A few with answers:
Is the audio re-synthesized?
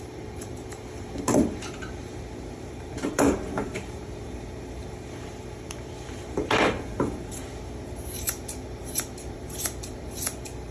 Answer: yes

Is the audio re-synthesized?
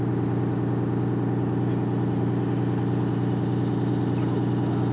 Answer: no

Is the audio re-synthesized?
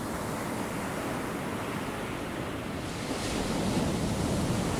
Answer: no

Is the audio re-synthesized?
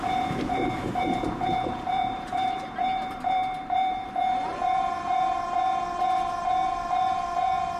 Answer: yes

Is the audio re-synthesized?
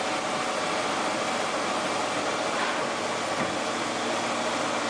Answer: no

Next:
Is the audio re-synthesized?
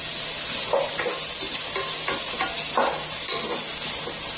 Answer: no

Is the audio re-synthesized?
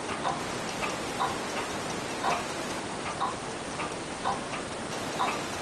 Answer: no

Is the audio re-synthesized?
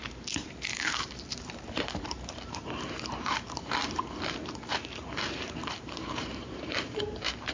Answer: yes